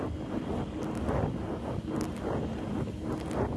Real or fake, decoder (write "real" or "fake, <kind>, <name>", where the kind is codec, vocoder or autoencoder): real